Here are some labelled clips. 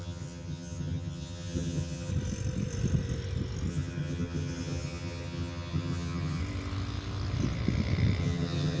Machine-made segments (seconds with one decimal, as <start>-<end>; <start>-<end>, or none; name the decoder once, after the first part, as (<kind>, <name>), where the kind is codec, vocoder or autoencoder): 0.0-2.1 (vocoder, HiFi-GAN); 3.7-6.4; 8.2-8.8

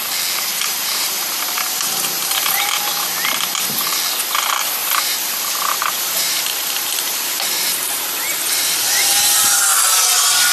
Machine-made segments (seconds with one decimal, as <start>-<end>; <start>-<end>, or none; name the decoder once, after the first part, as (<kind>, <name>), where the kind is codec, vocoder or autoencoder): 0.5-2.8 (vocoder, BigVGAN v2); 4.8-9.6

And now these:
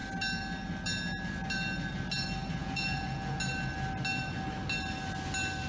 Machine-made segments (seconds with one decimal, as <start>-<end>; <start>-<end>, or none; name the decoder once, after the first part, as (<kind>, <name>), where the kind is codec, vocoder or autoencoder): 2.6-3.4 (vocoder, Vocos)

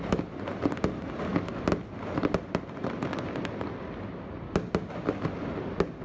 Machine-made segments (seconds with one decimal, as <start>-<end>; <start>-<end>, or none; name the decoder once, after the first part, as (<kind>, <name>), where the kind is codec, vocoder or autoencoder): none

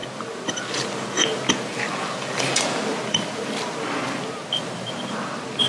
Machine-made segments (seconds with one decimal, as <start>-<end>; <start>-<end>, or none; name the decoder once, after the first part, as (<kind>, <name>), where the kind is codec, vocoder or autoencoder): none

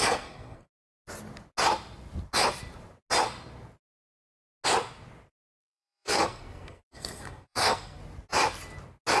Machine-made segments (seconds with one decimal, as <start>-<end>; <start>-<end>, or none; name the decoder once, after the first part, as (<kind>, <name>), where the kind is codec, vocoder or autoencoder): 0.0-0.9 (codec, SNAC); 5.5-8.0

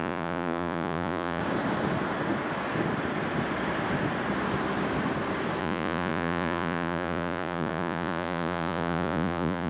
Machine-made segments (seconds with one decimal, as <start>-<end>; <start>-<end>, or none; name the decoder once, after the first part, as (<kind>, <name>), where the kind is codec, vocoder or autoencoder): 0.0-1.4 (vocoder, Vocos); 5.6-9.7